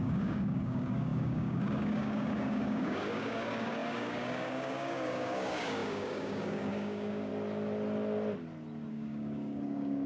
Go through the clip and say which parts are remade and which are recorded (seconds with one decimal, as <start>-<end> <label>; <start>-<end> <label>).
0.0-7.3 remade; 7.3-8.9 recorded; 8.9-10.1 remade